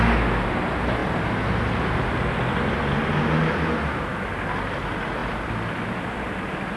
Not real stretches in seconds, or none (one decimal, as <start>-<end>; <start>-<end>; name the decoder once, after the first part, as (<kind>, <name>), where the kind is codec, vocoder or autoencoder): none